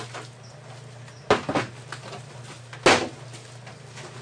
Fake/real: real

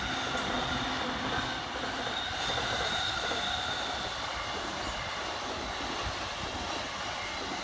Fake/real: real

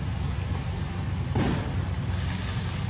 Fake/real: real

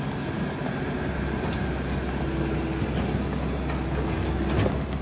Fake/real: real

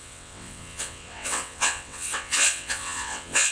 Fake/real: fake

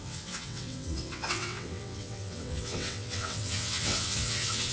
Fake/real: fake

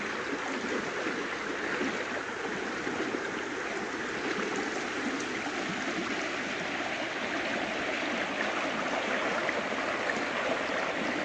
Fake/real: real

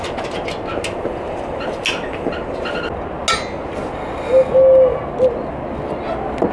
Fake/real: real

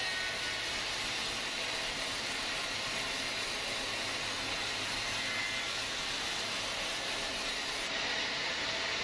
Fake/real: real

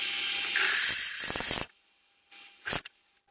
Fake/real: real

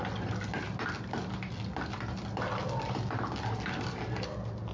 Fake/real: real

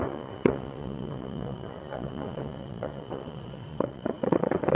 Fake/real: fake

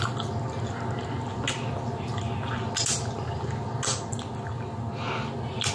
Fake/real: real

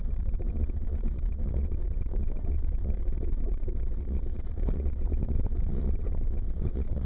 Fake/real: fake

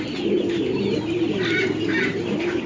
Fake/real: real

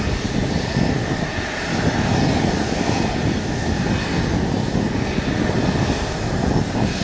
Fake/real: real